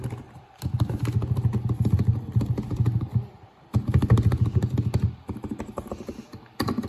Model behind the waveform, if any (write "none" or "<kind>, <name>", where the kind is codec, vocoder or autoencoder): none